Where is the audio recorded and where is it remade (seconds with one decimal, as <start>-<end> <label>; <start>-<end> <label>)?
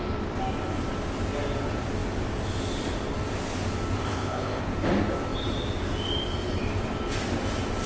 0.0-4.0 recorded; 4.0-4.6 remade; 4.6-7.9 recorded